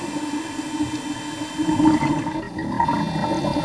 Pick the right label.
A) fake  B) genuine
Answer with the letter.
B